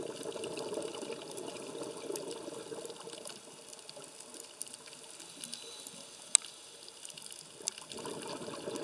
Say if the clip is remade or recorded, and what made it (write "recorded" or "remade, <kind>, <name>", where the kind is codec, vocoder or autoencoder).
recorded